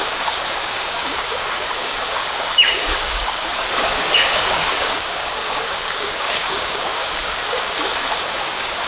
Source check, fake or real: fake